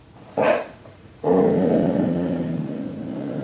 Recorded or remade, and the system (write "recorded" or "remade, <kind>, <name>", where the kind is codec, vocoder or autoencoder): remade, vocoder, Vocos